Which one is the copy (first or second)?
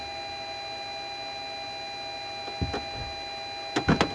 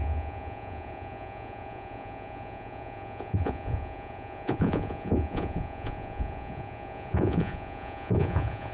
second